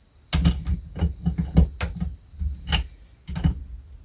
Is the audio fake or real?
real